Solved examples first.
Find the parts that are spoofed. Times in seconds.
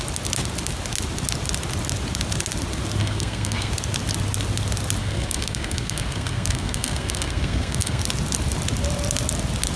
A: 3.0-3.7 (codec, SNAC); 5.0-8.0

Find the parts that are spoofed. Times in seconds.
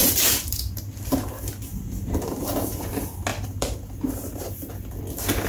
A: 0.0-0.8 (vocoder, BigVGAN v2); 1.7-2.8; 3.3-4.7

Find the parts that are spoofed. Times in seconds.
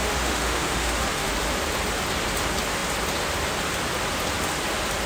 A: 0.0-1.3 (autoencoder, DAC-VAE)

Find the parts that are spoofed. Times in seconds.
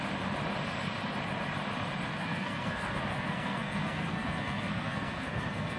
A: 2.1-5.8 (codec, SNAC)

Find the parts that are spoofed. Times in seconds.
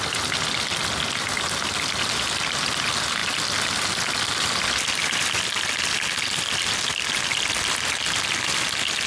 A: none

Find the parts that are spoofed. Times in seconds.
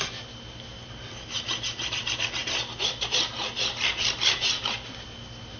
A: none